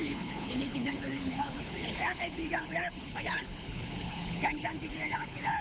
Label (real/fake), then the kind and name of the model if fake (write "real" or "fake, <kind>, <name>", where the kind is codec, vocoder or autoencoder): fake, codec, HILCodec